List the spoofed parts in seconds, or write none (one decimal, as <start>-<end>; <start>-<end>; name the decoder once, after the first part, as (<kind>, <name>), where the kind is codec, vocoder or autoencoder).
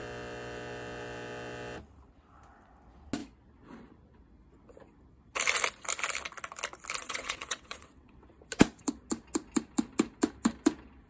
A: 7.0-8.3 (vocoder, WaveNeXt)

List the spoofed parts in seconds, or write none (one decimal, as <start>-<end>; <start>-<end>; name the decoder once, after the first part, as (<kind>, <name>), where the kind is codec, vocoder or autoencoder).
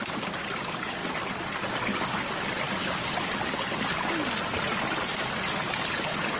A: none